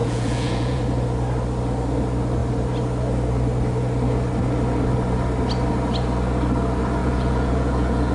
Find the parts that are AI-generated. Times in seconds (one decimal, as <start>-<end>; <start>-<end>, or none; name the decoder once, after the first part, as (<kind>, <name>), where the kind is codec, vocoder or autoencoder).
0.0-0.8 (vocoder, Vocos); 7.0-8.1